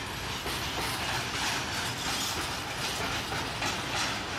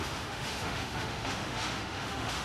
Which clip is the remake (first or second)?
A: second